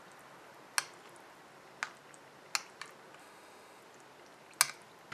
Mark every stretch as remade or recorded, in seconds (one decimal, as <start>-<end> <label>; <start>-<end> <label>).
0.0-3.2 recorded; 3.2-3.8 remade; 3.8-5.1 recorded